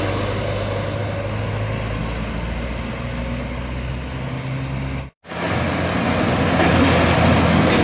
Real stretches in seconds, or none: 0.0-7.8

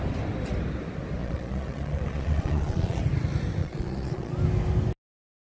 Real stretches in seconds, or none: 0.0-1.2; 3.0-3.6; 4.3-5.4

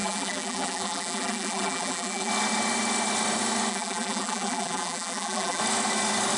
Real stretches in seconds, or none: 2.3-3.7; 5.6-6.4

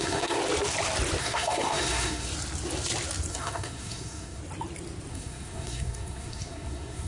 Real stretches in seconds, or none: 0.4-1.2; 2.3-3.3; 4.4-5.1

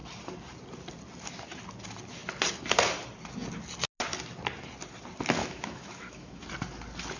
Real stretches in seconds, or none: 0.0-5.4; 6.4-7.2